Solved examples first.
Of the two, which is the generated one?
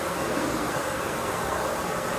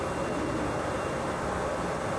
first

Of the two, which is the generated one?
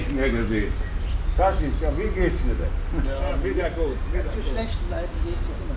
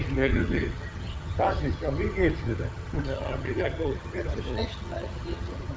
second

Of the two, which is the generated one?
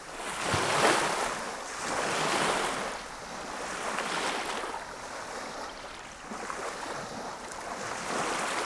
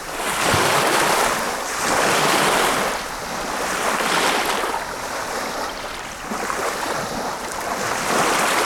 second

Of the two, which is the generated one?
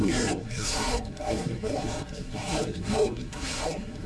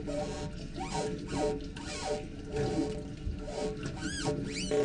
first